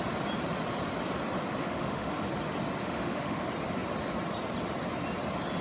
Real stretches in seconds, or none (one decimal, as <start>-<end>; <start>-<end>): 0.0-1.6; 2.3-2.8; 3.4-5.6